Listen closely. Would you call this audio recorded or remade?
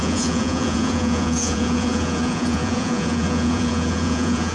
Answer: remade